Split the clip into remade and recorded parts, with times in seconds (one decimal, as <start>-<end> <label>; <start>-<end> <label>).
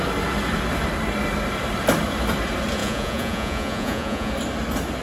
0.0-2.8 recorded; 2.8-4.3 remade; 4.3-5.0 recorded